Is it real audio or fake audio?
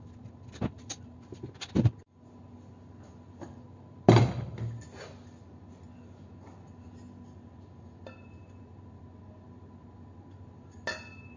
real